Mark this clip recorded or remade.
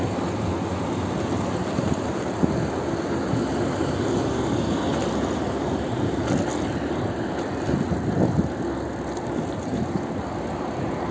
recorded